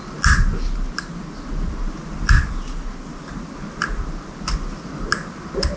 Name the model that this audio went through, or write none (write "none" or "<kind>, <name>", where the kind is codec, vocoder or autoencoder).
none